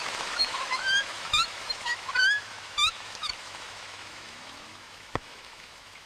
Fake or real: fake